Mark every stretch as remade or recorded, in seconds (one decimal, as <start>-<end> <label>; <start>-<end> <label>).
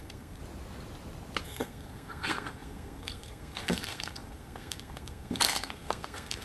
0.0-0.4 remade; 0.4-1.4 recorded; 1.4-6.4 remade